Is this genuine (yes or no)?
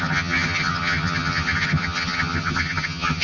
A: no